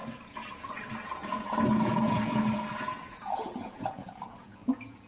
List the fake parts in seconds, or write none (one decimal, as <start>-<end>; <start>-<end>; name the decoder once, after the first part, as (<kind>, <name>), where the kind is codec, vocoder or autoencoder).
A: 0.0-5.1 (vocoder, Vocos)